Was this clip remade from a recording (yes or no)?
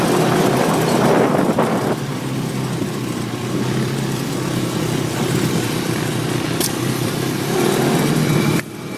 yes